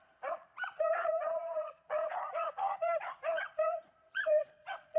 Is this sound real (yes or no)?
no